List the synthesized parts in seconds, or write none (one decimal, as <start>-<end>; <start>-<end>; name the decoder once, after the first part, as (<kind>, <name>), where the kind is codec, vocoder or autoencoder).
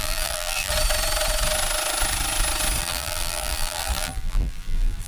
0.0-0.7 (vocoder, BigVGAN v2); 2.8-5.1